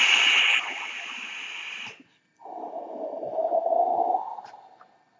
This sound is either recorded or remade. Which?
recorded